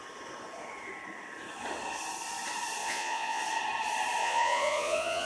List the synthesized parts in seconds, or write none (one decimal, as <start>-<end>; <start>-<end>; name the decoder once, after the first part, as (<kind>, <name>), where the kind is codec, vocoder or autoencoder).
2.8-3.4 (vocoder, Vocos); 4.2-5.3